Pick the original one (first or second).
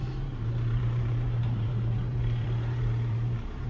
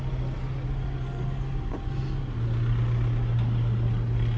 second